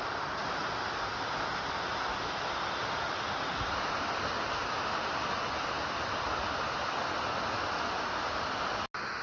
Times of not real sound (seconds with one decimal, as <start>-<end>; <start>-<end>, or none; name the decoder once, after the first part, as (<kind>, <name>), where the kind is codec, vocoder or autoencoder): none